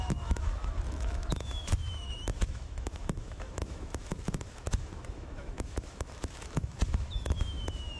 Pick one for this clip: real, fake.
fake